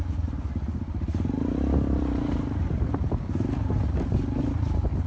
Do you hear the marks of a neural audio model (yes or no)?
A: no